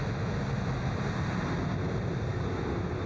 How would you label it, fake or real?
real